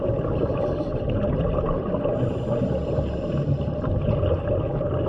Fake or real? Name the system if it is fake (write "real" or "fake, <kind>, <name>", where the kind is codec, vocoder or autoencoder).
real